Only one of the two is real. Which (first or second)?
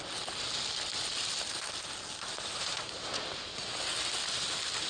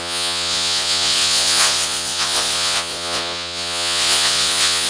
first